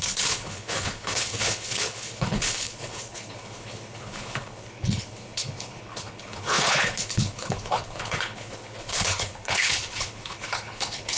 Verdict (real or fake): fake